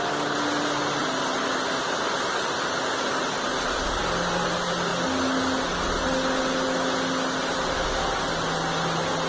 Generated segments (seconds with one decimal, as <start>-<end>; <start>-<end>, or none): none